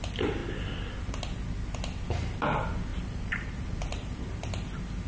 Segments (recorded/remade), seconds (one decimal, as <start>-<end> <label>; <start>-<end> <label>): 0.0-2.9 recorded; 2.9-4.2 remade; 4.2-5.1 recorded

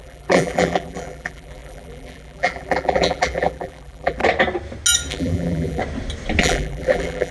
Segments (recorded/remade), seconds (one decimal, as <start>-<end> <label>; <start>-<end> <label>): 0.0-4.2 remade; 4.2-5.1 recorded; 5.1-5.8 remade; 5.8-6.4 recorded; 6.4-7.3 remade